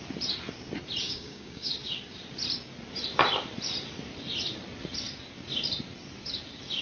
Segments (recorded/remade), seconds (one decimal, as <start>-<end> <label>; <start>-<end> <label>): 0.0-1.0 recorded; 1.0-1.7 remade; 1.7-6.8 recorded